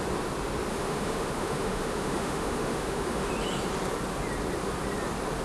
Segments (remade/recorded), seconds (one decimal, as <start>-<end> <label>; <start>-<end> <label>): 0.0-0.7 recorded; 0.7-3.3 remade; 3.3-5.4 recorded